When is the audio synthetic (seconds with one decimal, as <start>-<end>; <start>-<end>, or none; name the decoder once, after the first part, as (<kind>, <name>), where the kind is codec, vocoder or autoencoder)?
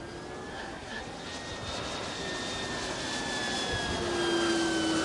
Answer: 0.5-1.0 (codec, SNAC)